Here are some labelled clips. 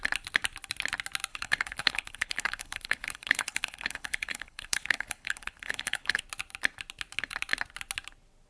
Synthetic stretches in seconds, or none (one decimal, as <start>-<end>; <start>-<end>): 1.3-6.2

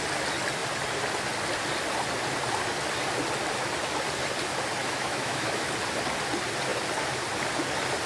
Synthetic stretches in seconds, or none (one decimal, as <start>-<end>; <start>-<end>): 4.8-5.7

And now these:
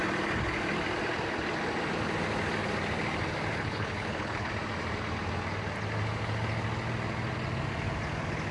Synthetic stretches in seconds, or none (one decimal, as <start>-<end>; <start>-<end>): 3.5-4.5

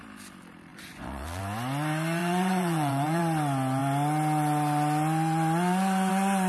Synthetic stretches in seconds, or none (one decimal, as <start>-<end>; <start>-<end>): 0.7-1.4; 2.2-3.2